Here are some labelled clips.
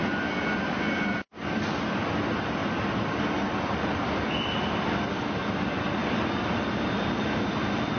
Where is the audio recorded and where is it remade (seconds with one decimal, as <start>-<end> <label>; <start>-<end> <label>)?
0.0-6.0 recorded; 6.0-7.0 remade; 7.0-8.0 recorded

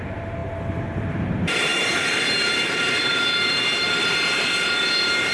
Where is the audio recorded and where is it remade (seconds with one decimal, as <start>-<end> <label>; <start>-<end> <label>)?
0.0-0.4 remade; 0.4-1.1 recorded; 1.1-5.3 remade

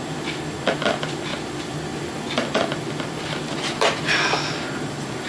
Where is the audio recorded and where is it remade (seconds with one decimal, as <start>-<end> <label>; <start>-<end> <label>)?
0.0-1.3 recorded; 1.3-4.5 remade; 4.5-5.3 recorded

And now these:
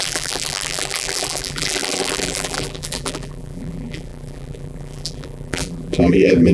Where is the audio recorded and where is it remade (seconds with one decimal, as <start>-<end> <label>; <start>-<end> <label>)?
0.0-6.5 remade

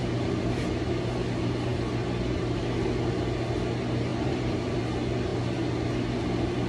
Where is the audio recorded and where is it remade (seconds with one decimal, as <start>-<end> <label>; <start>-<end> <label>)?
0.0-0.6 remade; 0.6-4.1 recorded; 4.1-4.8 remade; 4.8-6.7 recorded

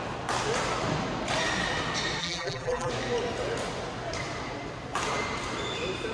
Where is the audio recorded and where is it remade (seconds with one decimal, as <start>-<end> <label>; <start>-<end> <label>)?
0.0-2.2 recorded; 2.2-2.9 remade; 2.9-6.1 recorded